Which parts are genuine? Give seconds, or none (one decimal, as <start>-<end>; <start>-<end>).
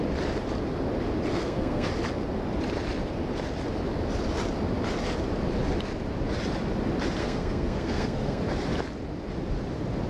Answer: 0.0-1.3; 1.9-7.2; 8.4-10.1